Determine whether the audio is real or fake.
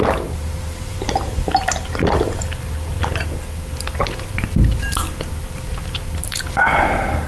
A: fake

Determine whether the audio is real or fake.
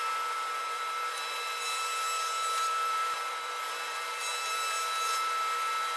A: fake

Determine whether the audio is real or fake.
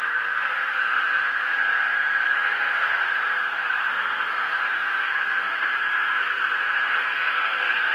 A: fake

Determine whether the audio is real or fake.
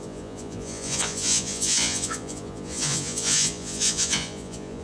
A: fake